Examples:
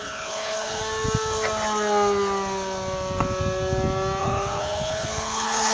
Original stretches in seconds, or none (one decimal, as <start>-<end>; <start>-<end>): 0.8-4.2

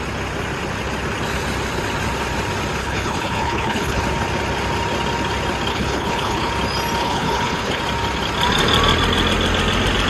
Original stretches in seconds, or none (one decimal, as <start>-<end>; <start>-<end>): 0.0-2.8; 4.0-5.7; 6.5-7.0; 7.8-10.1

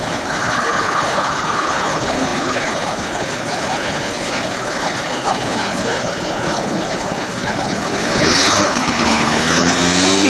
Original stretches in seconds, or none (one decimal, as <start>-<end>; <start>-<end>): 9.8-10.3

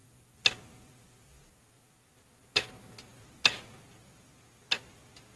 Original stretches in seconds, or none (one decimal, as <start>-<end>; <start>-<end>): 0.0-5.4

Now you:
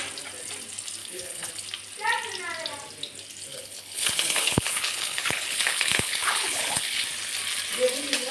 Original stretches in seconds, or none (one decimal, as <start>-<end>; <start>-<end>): 0.0-1.0; 1.5-3.5; 7.0-8.3

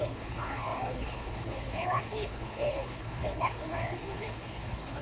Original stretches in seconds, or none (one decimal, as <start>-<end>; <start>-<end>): none